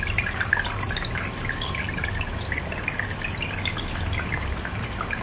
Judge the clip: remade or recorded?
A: recorded